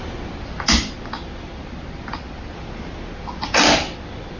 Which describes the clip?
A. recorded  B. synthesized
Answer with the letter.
A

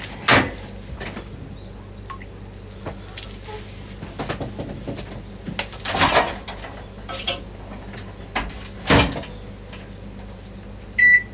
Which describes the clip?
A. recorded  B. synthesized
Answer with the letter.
A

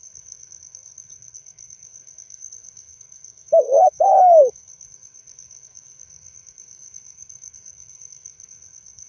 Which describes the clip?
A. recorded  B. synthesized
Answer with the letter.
B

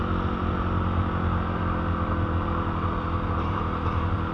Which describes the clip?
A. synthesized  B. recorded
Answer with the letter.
B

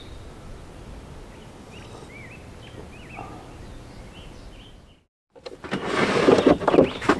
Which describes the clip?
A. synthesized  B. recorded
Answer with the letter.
B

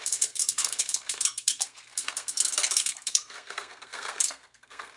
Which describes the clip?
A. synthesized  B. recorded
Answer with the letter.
A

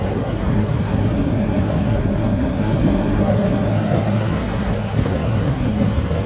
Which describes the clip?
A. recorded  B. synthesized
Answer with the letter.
B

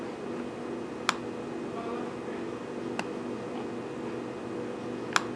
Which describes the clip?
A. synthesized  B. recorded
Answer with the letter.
B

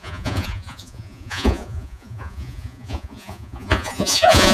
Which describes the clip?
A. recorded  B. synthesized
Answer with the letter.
B